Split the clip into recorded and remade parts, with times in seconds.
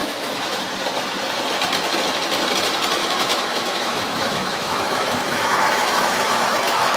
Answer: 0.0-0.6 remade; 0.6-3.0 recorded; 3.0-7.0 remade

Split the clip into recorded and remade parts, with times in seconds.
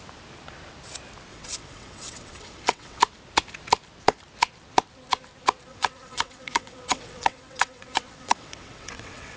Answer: 0.0-1.3 recorded; 1.3-3.0 remade; 3.0-5.7 recorded; 5.7-9.4 remade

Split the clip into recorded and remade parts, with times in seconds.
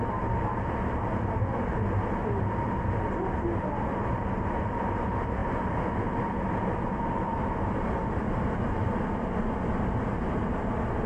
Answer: 0.0-11.1 recorded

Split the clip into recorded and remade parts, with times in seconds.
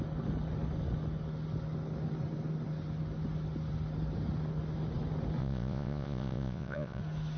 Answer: 0.0-5.4 recorded; 5.4-7.0 remade; 7.0-7.4 recorded